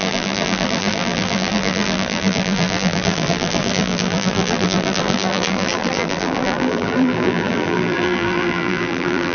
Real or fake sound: fake